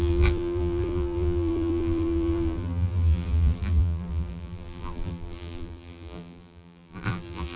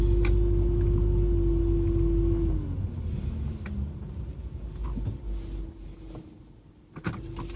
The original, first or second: second